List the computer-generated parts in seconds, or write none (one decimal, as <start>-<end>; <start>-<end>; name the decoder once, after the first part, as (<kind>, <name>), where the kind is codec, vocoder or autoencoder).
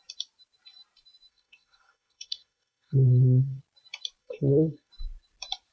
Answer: 1.3-3.6 (codec, SNAC); 4.2-4.9